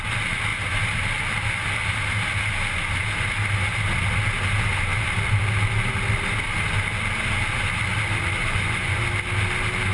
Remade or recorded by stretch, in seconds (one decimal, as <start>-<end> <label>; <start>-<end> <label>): 0.0-8.4 recorded; 8.4-9.0 remade; 9.0-9.9 recorded